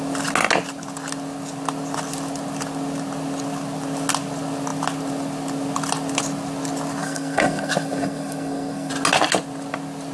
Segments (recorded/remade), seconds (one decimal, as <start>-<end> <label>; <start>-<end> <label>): 0.0-7.0 recorded; 7.0-8.9 remade; 8.9-10.1 recorded